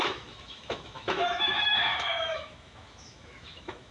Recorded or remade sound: remade